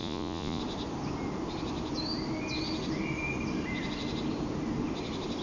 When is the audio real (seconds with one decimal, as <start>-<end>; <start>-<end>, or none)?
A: 0.6-5.4